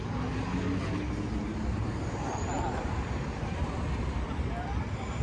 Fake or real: real